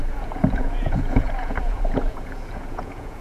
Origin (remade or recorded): remade